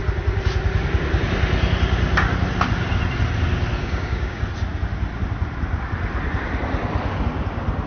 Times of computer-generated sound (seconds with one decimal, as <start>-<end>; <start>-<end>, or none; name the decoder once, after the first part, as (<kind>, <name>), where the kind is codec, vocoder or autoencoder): 3.8-4.4 (codec, DAC)